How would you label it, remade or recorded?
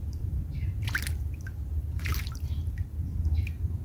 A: remade